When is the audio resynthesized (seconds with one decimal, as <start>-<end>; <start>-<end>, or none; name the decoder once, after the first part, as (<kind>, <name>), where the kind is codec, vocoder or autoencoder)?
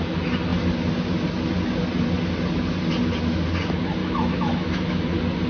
4.0-5.1 (autoencoder, DAC-VAE)